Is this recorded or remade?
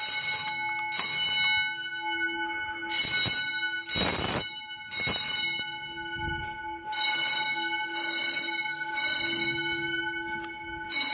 recorded